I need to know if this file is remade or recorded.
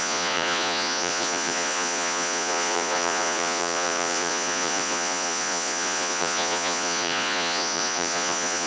remade